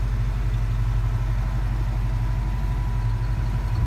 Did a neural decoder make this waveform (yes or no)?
no